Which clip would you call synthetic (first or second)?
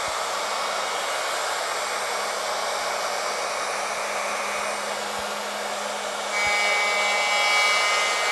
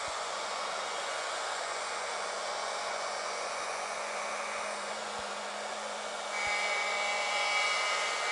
second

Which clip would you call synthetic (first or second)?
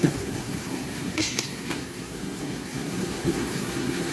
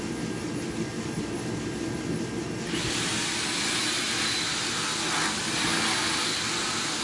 first